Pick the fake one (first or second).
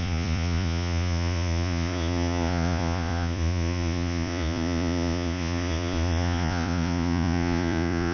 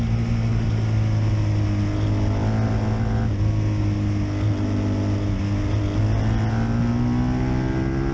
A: first